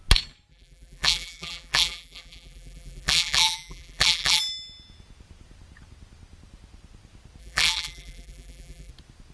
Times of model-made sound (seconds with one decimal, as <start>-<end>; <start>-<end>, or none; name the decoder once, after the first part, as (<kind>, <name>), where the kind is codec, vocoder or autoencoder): 0.5-4.4 (vocoder, BigVGAN v2); 7.4-8.9